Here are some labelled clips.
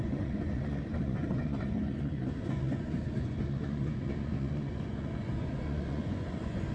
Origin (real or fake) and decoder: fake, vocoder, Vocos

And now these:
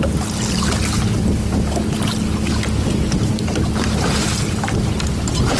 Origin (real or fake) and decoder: real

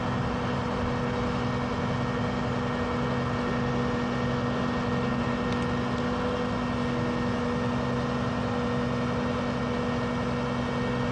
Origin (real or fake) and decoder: real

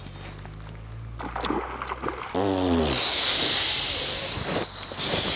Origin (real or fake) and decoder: real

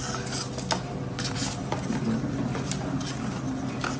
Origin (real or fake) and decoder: real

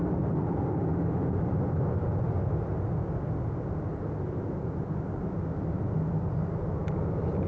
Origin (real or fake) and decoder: real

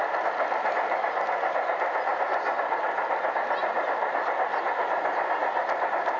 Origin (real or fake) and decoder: real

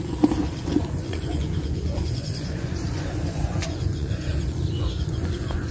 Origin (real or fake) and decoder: fake, vocoder, Vocos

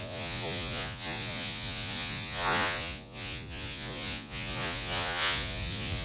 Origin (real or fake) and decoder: fake, vocoder, Vocos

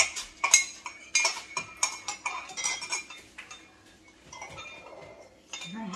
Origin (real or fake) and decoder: real